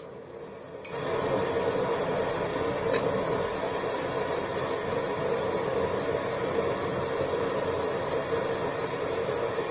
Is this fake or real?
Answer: real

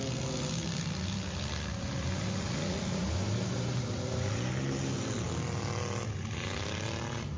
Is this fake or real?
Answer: real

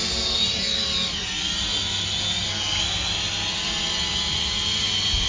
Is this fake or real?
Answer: real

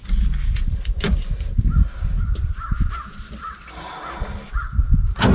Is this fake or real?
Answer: real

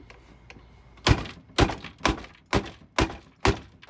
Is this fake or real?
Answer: real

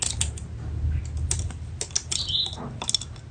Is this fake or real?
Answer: real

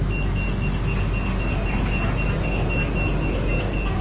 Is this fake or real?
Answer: real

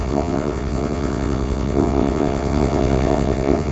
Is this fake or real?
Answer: fake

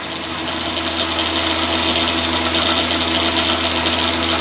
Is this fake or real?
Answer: real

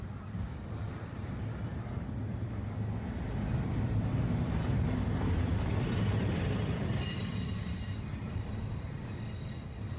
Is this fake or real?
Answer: real